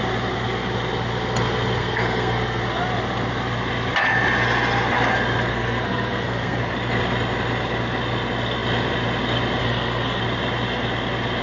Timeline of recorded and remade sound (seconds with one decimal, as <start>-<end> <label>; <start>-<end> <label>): 0.0-1.8 recorded; 1.8-2.6 remade; 2.6-5.5 recorded; 5.5-6.6 remade; 6.6-9.6 recorded; 9.6-10.2 remade; 10.2-11.4 recorded